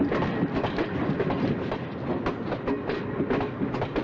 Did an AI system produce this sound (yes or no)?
no